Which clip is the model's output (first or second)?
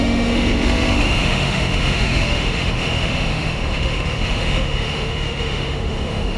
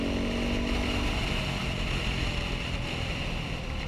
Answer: first